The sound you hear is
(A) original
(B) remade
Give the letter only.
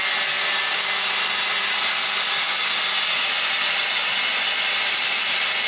A